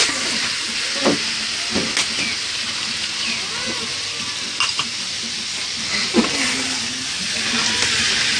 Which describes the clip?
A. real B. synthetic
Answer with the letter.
A